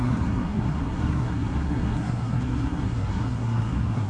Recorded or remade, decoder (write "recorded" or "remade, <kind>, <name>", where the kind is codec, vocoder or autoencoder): remade, codec, SNAC